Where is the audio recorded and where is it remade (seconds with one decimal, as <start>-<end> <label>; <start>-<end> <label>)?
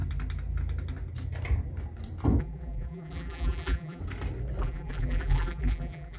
0.0-2.4 recorded; 2.4-4.0 remade; 4.0-4.6 recorded; 4.6-6.2 remade